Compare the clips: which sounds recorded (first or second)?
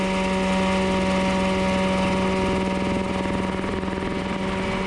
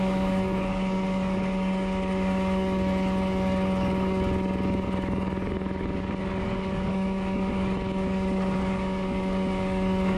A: first